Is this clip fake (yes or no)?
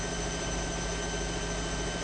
no